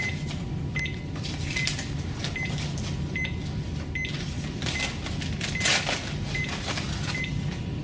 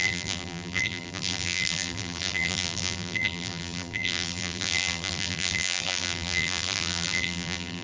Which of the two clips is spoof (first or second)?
second